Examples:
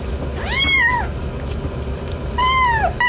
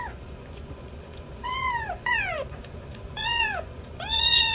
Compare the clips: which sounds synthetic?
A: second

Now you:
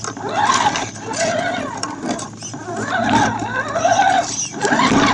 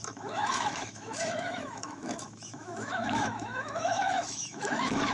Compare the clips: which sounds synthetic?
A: second